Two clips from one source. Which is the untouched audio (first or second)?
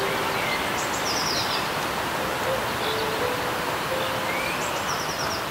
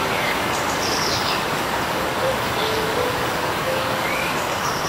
first